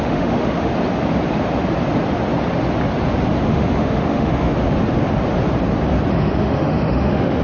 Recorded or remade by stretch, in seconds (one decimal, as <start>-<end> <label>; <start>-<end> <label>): 0.0-0.7 remade; 0.7-3.5 recorded; 3.5-4.5 remade; 4.5-6.1 recorded; 6.1-7.4 remade

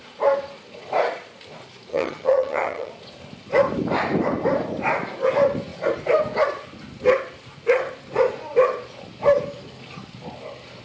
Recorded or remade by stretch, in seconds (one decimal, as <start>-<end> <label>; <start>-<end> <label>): 0.0-1.9 recorded; 1.9-2.9 remade; 2.9-10.8 recorded

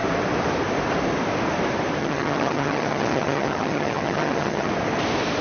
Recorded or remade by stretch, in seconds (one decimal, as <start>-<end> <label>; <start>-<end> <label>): 0.0-2.0 recorded; 2.0-4.7 remade; 4.7-5.4 recorded